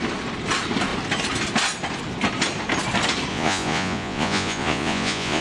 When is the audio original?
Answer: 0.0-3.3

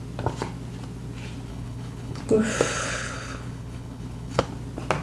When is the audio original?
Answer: 0.0-1.5; 2.2-2.8; 4.4-5.0

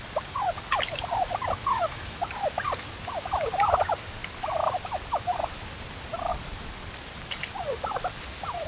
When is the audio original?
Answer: 0.0-1.7; 2.2-8.7